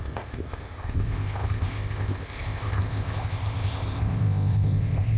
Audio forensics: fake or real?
fake